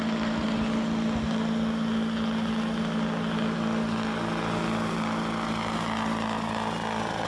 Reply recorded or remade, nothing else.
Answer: recorded